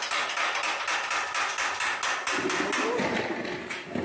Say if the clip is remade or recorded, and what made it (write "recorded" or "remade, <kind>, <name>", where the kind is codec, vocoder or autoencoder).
recorded